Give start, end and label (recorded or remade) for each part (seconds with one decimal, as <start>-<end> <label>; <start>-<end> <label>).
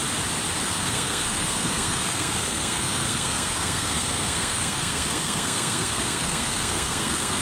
0.0-0.6 recorded; 0.6-7.4 remade